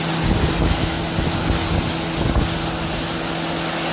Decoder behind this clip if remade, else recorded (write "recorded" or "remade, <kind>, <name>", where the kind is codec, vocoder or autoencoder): recorded